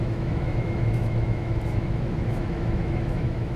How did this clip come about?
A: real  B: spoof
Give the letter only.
B